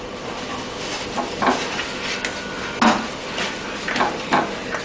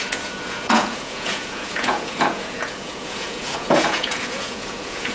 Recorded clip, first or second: first